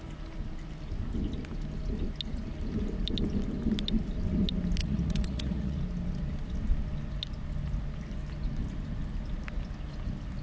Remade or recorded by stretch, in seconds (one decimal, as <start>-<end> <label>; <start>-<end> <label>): 0.0-4.8 recorded; 4.8-5.8 remade; 5.8-10.4 recorded